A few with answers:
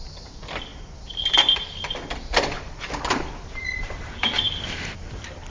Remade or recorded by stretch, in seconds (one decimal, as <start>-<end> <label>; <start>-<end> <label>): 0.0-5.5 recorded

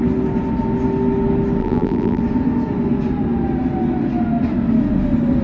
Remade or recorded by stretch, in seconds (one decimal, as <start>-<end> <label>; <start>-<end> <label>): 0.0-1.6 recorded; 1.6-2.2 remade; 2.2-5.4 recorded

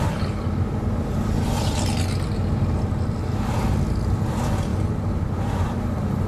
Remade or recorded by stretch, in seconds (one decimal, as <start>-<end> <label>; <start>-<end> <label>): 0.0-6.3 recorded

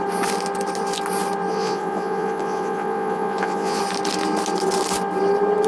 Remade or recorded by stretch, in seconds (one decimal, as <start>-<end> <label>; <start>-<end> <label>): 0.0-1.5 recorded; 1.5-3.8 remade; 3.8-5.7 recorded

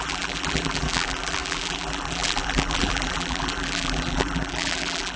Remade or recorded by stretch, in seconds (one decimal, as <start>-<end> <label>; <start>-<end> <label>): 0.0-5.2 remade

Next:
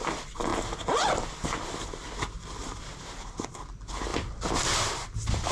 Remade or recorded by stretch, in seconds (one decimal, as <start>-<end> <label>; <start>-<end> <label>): 0.0-4.1 recorded; 4.1-4.8 remade; 4.8-5.5 recorded